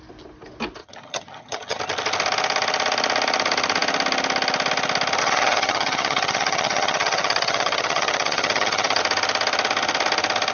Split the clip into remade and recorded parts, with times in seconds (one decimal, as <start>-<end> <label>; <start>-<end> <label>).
0.0-0.8 recorded; 0.8-1.8 remade; 1.8-5.2 recorded; 5.2-9.0 remade; 9.0-10.5 recorded